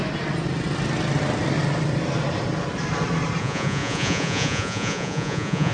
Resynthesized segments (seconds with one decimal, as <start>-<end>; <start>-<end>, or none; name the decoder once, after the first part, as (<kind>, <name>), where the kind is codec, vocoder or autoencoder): 3.4-5.7 (vocoder, Vocos)